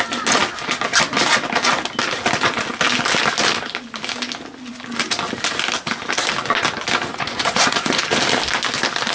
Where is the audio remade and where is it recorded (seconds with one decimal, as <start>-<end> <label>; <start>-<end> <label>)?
0.0-7.1 recorded; 7.1-8.0 remade; 8.0-9.1 recorded

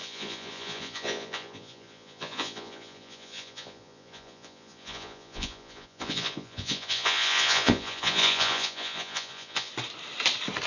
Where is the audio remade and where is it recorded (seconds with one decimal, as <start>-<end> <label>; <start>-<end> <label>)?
0.0-9.7 remade; 9.7-10.7 recorded

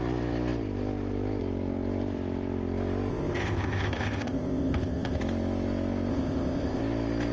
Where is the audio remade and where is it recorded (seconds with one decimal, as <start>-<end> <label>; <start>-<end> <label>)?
0.0-3.1 recorded; 3.1-5.2 remade; 5.2-6.1 recorded; 6.1-6.8 remade; 6.8-7.3 recorded

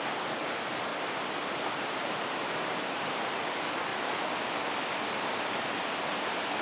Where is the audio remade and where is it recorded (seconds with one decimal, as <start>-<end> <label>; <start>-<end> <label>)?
0.0-0.9 recorded; 0.9-3.4 remade; 3.4-6.6 recorded

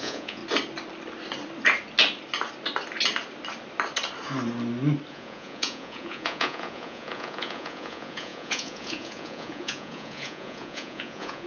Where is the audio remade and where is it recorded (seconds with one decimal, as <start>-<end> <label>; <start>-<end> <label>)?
0.0-0.4 remade; 0.4-5.1 recorded; 5.1-11.5 remade

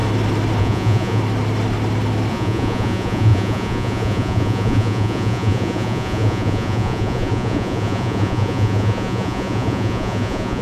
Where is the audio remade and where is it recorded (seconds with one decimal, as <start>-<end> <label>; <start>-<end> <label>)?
0.0-0.6 recorded; 0.6-1.2 remade; 1.2-2.3 recorded; 2.3-10.6 remade

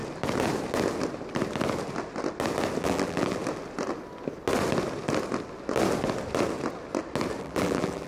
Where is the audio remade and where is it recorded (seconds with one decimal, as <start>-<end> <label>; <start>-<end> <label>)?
0.0-2.8 recorded; 2.8-3.4 remade; 3.4-7.4 recorded; 7.4-8.1 remade

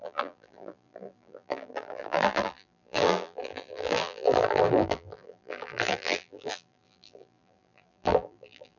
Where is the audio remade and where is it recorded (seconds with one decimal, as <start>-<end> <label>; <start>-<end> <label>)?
0.0-8.8 remade